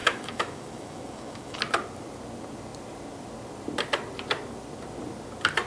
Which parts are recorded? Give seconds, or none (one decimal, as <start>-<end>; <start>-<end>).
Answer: 1.6-5.7